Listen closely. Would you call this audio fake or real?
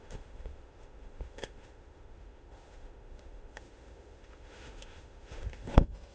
fake